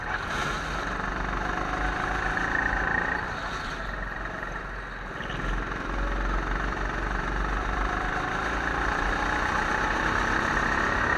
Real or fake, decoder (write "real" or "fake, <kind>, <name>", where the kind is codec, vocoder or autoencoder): real